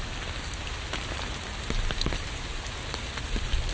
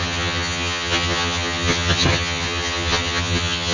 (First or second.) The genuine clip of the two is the first